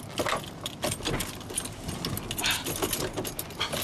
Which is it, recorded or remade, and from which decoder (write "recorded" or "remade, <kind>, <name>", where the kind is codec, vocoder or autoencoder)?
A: recorded